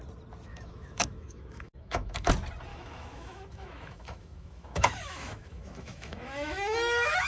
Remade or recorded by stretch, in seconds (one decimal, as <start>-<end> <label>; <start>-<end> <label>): 0.0-0.5 recorded; 0.5-2.3 remade; 2.3-2.7 recorded; 2.7-7.3 remade